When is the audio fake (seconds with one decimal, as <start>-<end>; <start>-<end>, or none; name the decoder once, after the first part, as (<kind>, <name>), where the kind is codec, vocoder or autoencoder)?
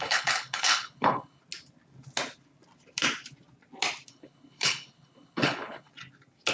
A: 0.0-1.4 (codec, HILCodec); 4.1-5.9